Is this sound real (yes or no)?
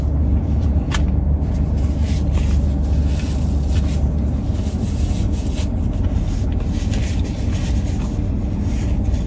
yes